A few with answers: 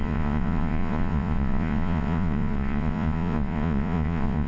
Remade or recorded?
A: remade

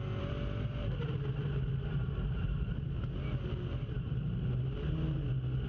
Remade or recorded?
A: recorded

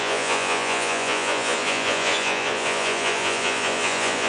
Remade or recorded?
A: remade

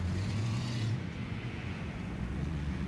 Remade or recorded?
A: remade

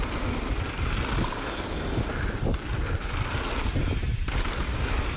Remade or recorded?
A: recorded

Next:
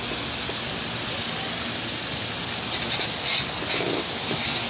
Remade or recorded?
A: recorded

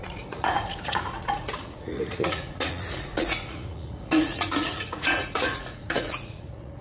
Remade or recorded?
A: remade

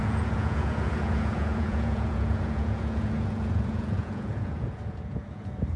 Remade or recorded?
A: remade